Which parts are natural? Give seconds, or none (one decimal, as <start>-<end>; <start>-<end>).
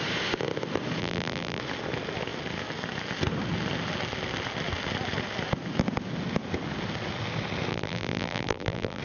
0.0-1.0; 1.6-7.7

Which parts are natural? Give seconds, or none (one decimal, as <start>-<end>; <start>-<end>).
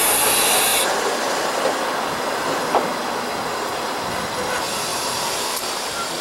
0.0-4.9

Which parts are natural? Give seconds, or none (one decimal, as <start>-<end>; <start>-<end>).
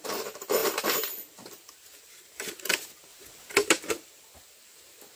3.1-3.7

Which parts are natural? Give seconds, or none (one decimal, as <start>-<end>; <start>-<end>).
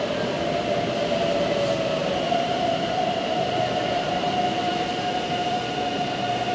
0.0-2.0; 4.3-4.7; 5.6-6.5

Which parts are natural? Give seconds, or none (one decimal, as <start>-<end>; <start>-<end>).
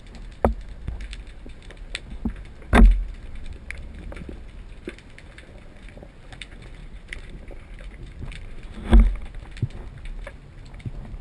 0.0-6.8; 8.6-11.2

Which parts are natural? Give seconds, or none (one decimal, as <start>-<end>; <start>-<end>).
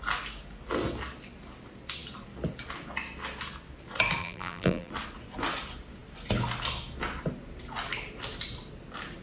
0.0-4.2; 4.9-9.2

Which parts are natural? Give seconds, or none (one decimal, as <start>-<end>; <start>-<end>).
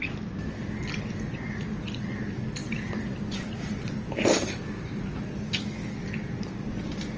0.0-2.6; 5.4-7.2